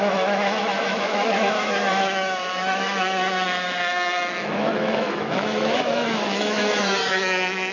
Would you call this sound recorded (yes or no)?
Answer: no